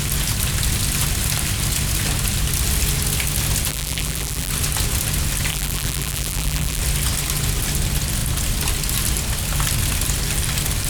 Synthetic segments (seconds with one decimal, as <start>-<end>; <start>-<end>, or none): 3.7-4.5; 5.5-6.8